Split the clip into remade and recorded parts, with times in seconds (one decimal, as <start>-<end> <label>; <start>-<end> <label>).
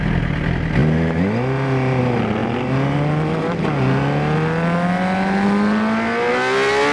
0.0-6.9 recorded